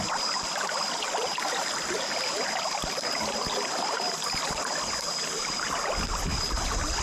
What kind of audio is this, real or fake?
real